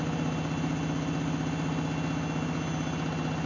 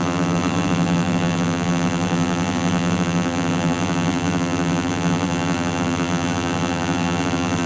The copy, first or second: second